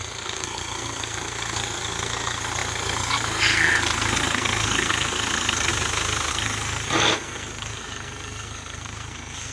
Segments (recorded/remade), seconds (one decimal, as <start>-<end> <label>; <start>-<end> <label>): 0.0-5.7 remade; 5.7-6.3 recorded; 6.3-9.5 remade

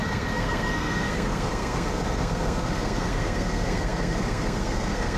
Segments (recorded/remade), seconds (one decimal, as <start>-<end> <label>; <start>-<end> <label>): 0.0-5.2 remade

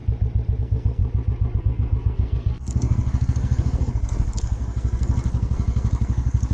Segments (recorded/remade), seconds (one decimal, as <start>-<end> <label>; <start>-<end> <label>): 0.0-0.6 recorded; 0.6-1.0 remade; 1.0-1.6 recorded; 1.6-6.5 remade

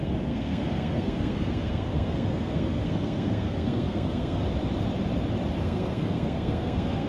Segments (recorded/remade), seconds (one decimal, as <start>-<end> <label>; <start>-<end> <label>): 0.0-4.4 remade; 4.4-5.6 recorded; 5.6-7.1 remade

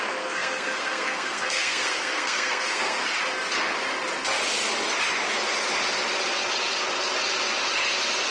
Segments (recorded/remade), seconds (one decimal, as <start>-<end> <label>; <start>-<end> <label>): 0.0-3.0 remade; 3.0-8.3 recorded

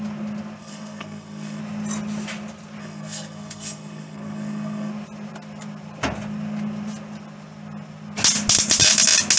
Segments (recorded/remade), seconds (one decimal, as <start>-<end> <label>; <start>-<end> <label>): 0.0-0.6 recorded; 0.6-1.6 remade; 1.6-2.8 recorded; 2.8-4.9 remade; 4.9-9.4 recorded

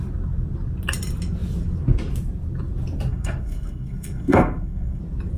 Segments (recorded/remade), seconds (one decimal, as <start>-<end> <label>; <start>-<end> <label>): 0.0-3.1 recorded; 3.1-5.0 remade; 5.0-5.4 recorded